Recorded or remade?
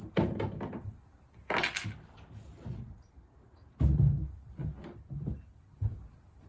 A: recorded